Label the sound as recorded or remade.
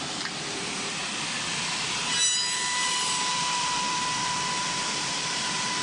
remade